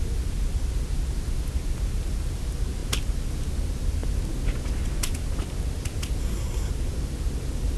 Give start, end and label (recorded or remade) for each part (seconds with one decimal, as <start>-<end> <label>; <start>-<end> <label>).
0.0-6.2 recorded; 6.2-6.7 remade; 6.7-7.8 recorded